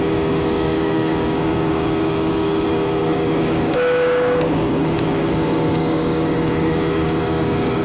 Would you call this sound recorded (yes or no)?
no